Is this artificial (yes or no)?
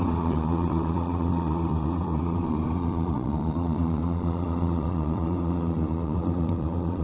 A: yes